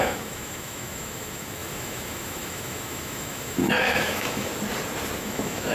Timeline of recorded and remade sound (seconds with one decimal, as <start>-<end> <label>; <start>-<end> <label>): 0.0-4.5 remade; 4.5-5.2 recorded; 5.2-5.7 remade